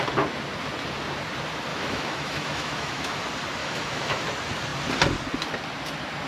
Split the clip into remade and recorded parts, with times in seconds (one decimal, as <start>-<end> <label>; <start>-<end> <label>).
0.0-1.7 recorded; 1.7-3.2 remade; 3.2-3.6 recorded; 3.6-4.2 remade; 4.2-6.3 recorded